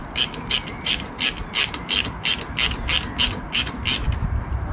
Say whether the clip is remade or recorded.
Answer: recorded